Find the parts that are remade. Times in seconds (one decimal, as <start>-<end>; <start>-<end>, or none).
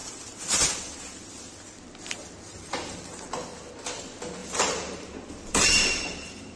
4.4-6.6